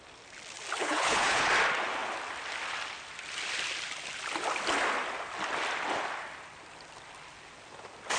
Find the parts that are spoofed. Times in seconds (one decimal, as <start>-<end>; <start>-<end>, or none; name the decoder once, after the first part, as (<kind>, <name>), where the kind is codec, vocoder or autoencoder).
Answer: 0.8-1.5 (codec, HILCodec)